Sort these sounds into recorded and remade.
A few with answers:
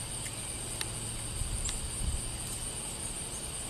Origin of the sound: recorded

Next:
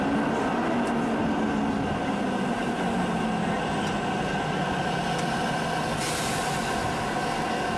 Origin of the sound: recorded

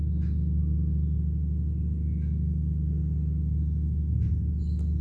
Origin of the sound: recorded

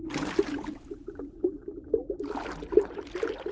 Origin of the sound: recorded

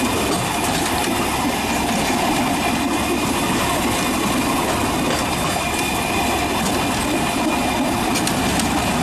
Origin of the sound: recorded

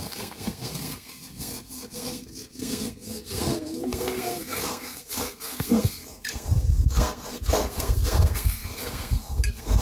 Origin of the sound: remade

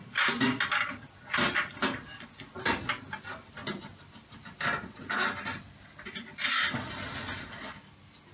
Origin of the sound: recorded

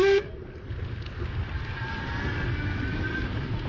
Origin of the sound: recorded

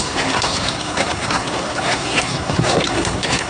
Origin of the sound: remade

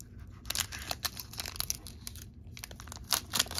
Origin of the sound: recorded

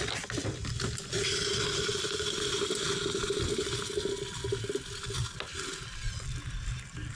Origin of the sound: recorded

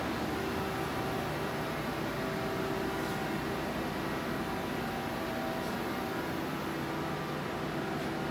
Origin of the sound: recorded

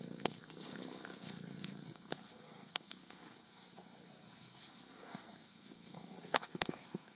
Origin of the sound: remade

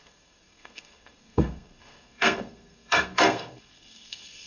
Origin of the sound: remade